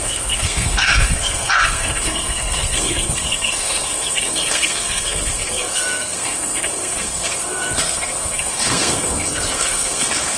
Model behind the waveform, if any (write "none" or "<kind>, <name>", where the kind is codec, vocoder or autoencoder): codec, SNAC